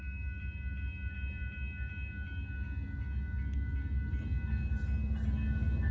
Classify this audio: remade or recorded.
recorded